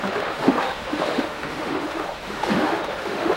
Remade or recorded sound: remade